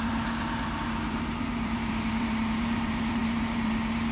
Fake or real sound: fake